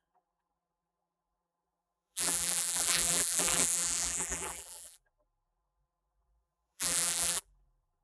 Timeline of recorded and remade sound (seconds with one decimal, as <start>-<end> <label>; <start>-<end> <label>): 0.0-8.0 remade